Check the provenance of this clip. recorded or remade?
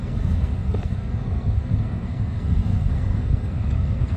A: remade